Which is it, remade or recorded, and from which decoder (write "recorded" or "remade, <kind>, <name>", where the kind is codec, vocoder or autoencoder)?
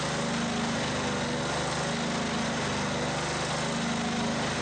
recorded